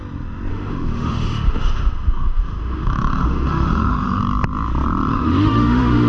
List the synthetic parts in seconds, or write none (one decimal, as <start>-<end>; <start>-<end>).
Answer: 0.5-4.2; 5.1-6.1